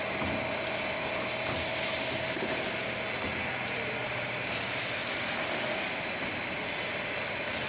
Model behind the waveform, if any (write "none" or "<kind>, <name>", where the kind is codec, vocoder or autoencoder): none